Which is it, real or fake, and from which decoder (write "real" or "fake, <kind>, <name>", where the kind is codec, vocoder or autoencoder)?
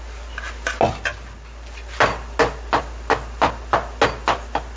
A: real